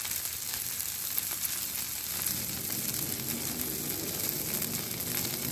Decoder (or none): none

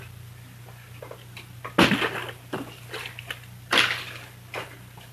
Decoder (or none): none